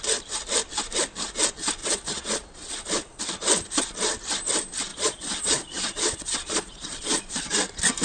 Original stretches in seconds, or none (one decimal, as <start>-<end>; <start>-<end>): 0.0-1.8; 3.2-4.9; 7.5-8.0